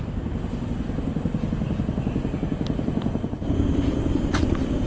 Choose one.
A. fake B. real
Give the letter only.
B